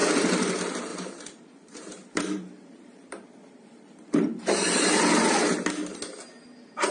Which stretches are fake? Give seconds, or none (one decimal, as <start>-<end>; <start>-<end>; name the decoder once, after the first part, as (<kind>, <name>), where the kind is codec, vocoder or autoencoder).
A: 0.0-0.5 (vocoder, BigVGAN v2); 0.9-4.9